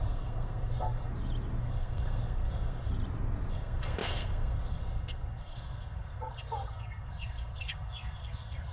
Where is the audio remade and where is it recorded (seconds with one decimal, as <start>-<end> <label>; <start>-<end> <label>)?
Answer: 0.0-1.1 remade; 1.1-1.6 recorded; 1.6-2.9 remade; 2.9-3.5 recorded; 3.5-8.7 remade